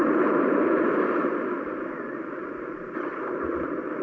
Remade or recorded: remade